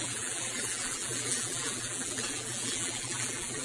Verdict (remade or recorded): remade